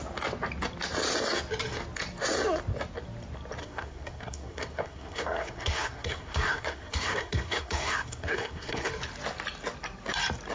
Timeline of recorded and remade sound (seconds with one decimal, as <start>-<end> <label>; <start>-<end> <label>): 0.0-3.6 recorded; 3.6-8.9 remade; 8.9-10.5 recorded